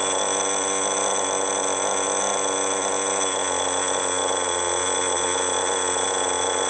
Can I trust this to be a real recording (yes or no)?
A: yes